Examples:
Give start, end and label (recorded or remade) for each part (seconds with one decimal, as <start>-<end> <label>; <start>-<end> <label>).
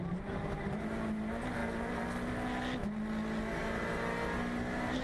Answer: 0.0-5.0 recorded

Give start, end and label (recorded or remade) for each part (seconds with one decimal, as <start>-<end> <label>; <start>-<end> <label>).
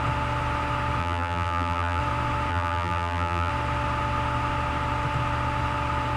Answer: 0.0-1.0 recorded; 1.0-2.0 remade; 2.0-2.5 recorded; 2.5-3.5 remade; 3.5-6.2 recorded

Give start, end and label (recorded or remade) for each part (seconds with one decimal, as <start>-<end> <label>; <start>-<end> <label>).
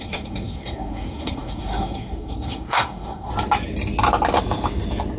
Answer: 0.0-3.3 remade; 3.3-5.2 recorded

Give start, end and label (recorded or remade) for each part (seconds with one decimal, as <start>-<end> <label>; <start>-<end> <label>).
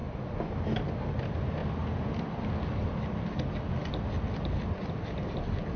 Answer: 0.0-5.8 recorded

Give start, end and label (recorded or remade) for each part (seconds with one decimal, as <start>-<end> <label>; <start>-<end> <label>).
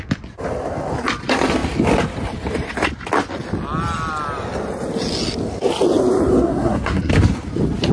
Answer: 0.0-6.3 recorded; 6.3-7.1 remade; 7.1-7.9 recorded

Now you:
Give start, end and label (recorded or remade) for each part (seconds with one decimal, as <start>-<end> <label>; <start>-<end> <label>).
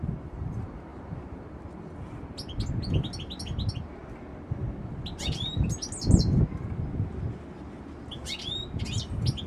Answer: 0.0-0.9 recorded; 0.9-2.1 remade; 2.1-9.5 recorded